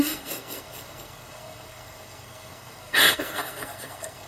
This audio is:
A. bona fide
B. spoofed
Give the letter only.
B